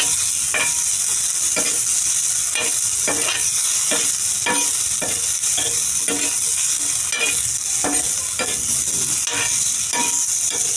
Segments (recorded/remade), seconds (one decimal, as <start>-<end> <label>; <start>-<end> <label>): 0.0-10.8 recorded